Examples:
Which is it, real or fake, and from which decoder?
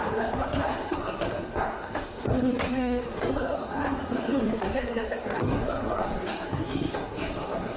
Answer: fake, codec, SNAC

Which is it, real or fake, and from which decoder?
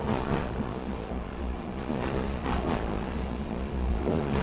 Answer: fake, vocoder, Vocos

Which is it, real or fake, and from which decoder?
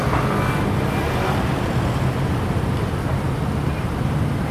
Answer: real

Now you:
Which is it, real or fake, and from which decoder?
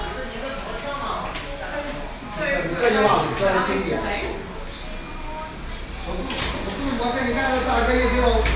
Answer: real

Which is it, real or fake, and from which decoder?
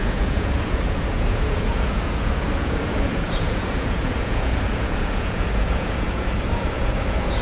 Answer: fake, vocoder, Vocos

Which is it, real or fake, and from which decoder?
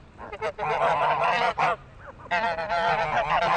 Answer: real